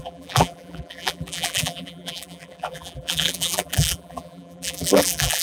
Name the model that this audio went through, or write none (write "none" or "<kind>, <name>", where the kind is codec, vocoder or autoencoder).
vocoder, BigVGAN v2